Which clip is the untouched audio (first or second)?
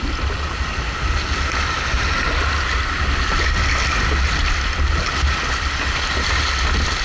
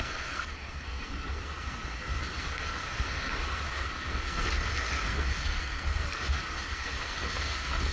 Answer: first